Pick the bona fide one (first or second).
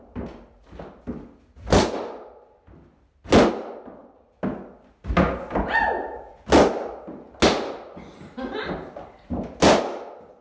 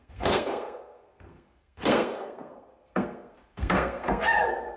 first